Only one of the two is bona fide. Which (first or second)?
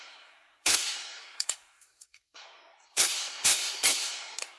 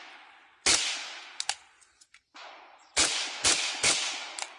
second